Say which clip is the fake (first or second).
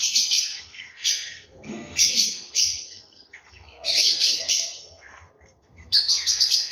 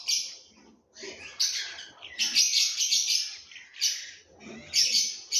first